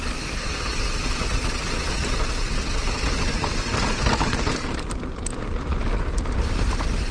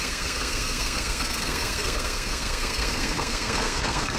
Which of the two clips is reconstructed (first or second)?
second